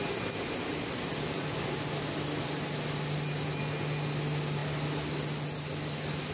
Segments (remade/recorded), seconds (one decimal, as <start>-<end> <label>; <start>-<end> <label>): 0.0-6.3 recorded